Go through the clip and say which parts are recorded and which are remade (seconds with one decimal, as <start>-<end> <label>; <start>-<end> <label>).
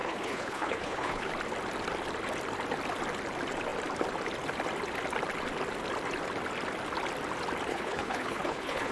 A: 0.0-1.3 remade; 1.3-7.7 recorded; 7.7-8.9 remade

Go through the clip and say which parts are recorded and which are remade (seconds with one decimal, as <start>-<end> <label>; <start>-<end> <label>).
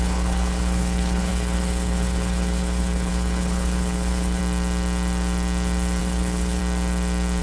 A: 0.0-4.4 remade; 4.4-6.0 recorded; 6.0-6.6 remade; 6.6-7.4 recorded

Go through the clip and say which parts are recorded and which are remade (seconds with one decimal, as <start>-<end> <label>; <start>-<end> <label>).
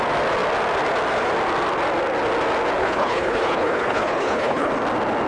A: 0.0-2.8 recorded; 2.8-4.7 remade; 4.7-5.3 recorded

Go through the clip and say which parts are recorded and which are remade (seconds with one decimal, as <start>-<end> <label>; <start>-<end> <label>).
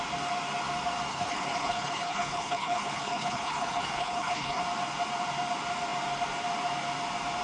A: 0.0-1.1 recorded; 1.1-4.6 remade; 4.6-7.4 recorded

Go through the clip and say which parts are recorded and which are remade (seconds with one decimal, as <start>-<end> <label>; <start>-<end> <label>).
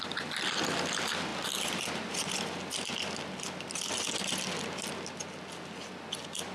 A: 0.0-6.5 recorded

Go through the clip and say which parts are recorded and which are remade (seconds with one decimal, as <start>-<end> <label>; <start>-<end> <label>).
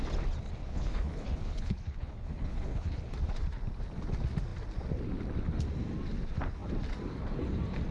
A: 0.0-0.6 recorded; 0.6-3.0 remade; 3.0-7.9 recorded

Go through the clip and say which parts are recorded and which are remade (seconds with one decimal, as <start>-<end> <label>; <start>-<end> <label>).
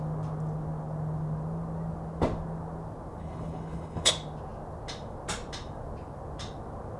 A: 0.0-3.2 recorded; 3.2-4.1 remade; 4.1-7.0 recorded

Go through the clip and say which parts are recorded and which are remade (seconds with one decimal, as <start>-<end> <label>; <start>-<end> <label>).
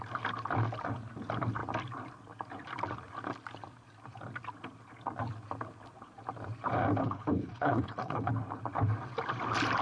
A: 0.0-7.0 recorded; 7.0-8.3 remade; 8.3-9.8 recorded